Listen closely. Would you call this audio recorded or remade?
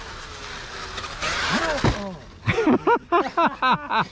recorded